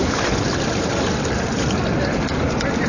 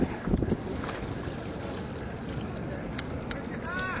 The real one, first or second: second